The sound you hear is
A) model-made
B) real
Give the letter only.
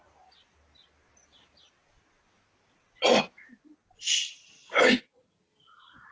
B